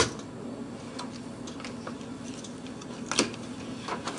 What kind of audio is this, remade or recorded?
recorded